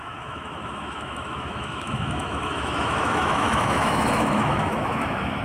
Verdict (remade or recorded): remade